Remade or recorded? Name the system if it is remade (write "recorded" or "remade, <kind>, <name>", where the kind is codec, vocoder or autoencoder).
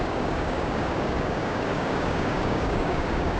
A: remade, codec, DAC